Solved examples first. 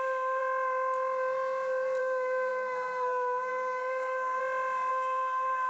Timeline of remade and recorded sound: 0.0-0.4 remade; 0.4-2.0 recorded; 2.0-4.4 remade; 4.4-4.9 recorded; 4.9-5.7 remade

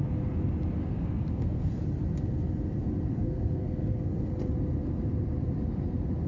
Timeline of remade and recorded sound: 0.0-0.8 recorded; 0.8-1.8 remade; 1.8-3.1 recorded; 3.1-4.3 remade; 4.3-6.3 recorded

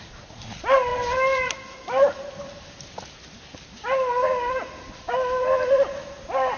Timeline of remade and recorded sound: 0.0-6.6 recorded

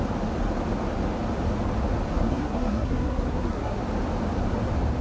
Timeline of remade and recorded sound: 0.0-2.1 recorded; 2.1-3.8 remade; 3.8-5.0 recorded

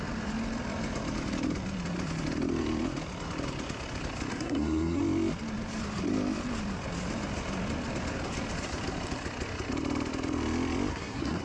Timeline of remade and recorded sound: 0.0-4.3 recorded; 4.3-5.0 remade; 5.0-10.9 recorded; 10.9-11.4 remade

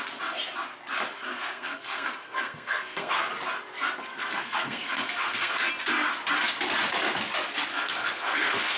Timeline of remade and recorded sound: 0.0-1.3 recorded; 1.3-3.3 remade; 3.3-4.1 recorded; 4.1-5.7 remade; 5.7-7.7 recorded; 7.7-8.8 remade